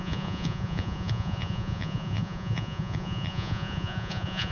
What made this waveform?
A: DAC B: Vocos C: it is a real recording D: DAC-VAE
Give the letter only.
B